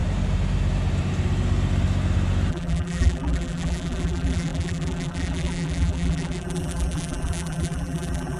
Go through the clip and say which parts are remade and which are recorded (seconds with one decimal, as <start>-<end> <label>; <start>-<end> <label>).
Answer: 0.0-2.5 recorded; 2.5-8.4 remade